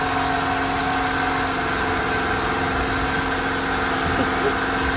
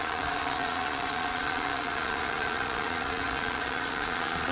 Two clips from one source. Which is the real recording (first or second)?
first